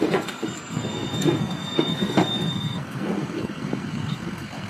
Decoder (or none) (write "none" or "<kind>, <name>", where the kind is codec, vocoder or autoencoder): codec, SNAC